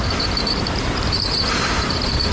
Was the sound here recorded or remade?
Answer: remade